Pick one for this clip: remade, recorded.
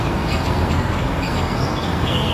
remade